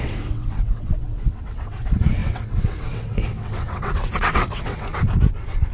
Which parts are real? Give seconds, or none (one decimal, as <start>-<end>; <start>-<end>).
4.9-5.7